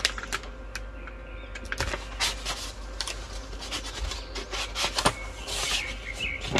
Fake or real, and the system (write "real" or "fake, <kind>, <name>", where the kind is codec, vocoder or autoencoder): real